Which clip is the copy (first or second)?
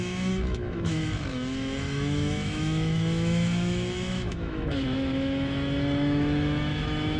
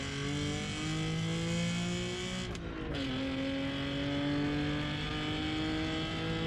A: first